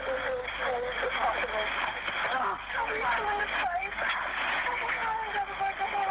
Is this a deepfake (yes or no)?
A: no